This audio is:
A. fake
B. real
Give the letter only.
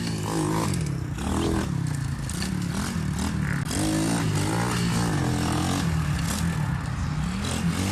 B